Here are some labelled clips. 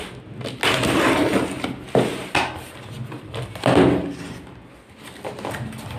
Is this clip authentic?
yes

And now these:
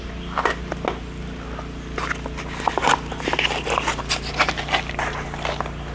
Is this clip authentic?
yes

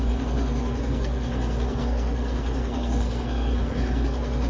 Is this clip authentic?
no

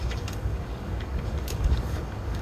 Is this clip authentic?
no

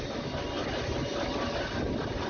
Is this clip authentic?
yes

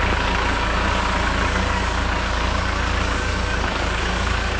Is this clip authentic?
no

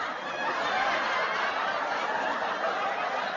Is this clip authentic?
yes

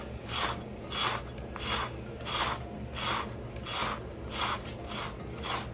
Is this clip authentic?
yes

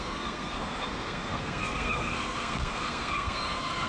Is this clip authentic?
no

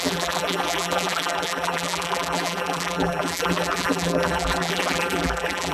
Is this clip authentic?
no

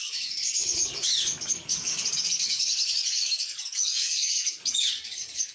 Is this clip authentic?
no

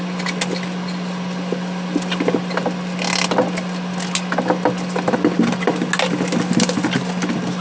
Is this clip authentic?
yes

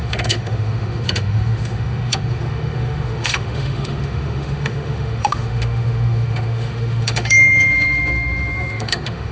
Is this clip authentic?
no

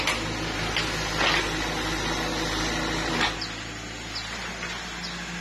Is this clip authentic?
yes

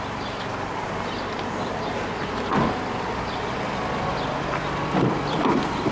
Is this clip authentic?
yes